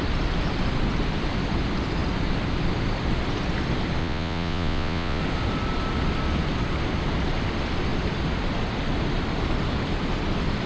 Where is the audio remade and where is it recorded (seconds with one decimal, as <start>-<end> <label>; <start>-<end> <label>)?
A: 0.0-4.0 recorded; 4.0-5.2 remade; 5.2-10.7 recorded